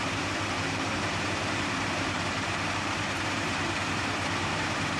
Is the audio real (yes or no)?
no